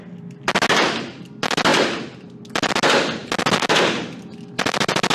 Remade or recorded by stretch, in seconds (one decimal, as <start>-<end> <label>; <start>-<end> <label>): 0.0-5.1 recorded

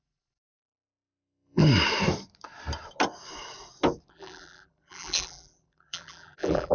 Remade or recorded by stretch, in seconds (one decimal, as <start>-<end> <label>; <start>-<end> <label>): 0.0-1.6 remade; 1.6-4.1 recorded; 4.1-6.7 remade

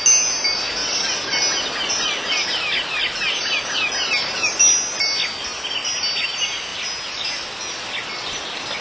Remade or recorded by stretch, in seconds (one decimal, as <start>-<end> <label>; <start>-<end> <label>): 0.0-8.8 recorded

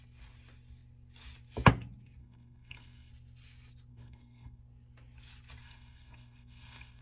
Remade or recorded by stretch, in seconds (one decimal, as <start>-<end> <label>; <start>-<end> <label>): 0.0-2.2 recorded; 2.2-3.1 remade; 3.1-3.9 recorded; 3.9-4.6 remade; 4.6-5.6 recorded; 5.6-7.0 remade